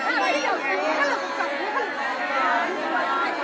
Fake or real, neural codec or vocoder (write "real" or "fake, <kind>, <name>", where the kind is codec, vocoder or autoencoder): real